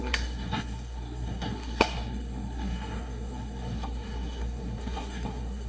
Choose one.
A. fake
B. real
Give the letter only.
A